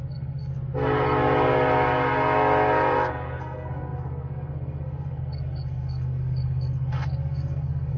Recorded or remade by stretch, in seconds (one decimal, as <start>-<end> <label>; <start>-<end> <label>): 0.0-0.5 remade; 0.5-3.1 recorded; 3.1-8.0 remade